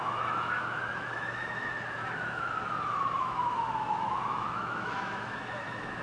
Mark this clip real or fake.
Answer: fake